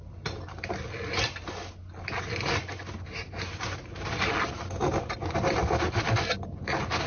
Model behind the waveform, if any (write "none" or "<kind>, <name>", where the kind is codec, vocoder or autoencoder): none